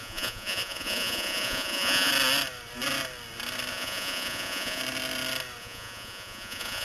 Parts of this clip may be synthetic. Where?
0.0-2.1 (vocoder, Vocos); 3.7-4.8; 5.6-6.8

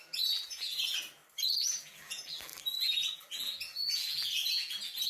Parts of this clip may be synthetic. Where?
0.0-1.2 (vocoder, BigVGAN v2); 1.8-5.1

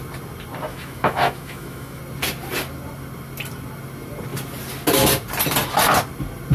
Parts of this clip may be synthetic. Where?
0.7-2.0 (autoencoder, DAC-VAE)

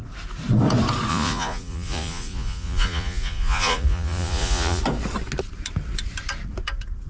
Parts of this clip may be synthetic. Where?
1.1-4.8 (vocoder, Vocos)

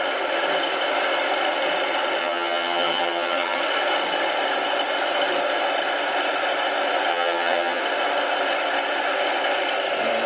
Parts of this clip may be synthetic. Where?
2.2-3.6 (vocoder, HiFi-GAN); 7.1-7.8

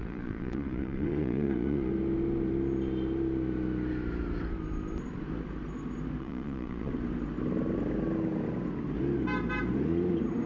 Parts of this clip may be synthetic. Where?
0.0-1.9 (vocoder, Vocos); 6.2-6.9

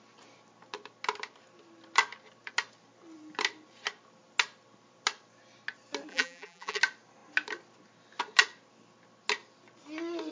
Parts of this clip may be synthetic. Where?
6.1-6.8 (vocoder, BigVGAN v2)